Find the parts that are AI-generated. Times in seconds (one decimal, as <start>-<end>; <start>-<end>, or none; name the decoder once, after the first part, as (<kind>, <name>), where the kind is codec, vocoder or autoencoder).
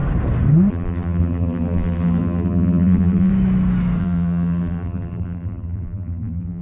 0.7-3.3 (vocoder, BigVGAN v2); 4.0-6.6